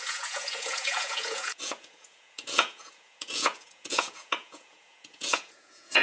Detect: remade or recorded remade